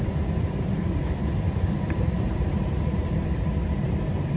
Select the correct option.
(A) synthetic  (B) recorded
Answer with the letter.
A